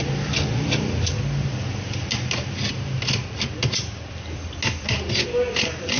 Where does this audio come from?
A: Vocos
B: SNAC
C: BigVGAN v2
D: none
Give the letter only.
D